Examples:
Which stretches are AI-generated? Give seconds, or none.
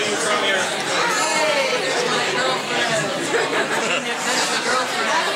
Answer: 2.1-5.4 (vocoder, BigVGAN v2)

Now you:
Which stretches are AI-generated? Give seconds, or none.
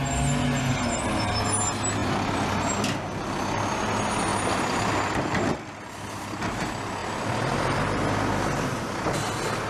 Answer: 2.0-2.7 (vocoder, BigVGAN v2); 7.0-7.8